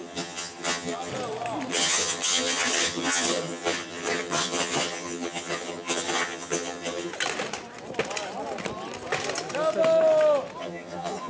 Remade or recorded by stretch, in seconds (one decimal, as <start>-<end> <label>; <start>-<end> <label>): 0.0-1.1 remade; 1.1-1.7 recorded; 1.7-7.1 remade; 7.1-10.6 recorded; 10.6-11.3 remade